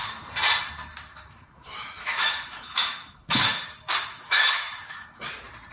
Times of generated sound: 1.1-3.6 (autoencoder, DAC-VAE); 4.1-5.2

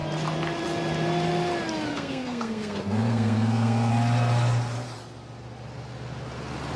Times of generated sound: 1.9-3.9 (codec, SNAC)

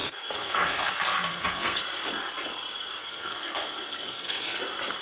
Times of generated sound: 0.0-0.9 (codec, SNAC); 1.3-1.8; 3.0-4.6

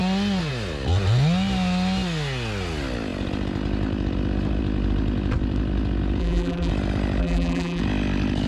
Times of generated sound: 6.2-6.7 (vocoder, BigVGAN v2); 7.2-7.8

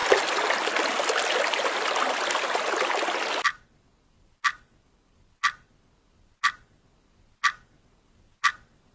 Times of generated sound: none